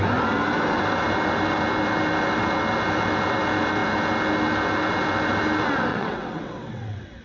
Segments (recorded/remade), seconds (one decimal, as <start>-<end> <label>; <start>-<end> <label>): 0.0-5.9 recorded; 5.9-7.2 remade